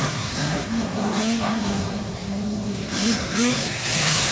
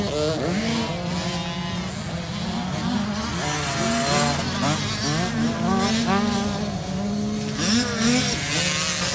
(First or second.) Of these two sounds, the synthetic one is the first